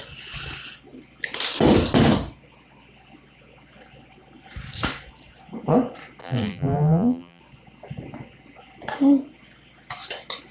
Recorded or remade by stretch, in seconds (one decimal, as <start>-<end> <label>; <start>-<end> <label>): 0.0-6.2 recorded; 6.2-7.4 remade; 7.4-10.5 recorded